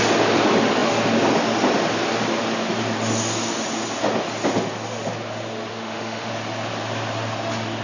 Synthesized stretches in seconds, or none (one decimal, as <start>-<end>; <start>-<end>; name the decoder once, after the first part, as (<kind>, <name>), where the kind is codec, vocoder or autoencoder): 5.7-6.3 (autoencoder, DAC-VAE)